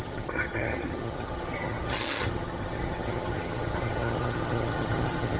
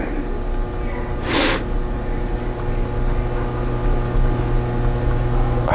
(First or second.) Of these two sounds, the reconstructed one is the first